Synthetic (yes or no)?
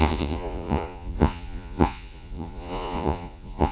yes